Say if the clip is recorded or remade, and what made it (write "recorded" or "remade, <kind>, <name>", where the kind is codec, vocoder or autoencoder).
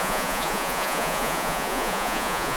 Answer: remade, vocoder, Vocos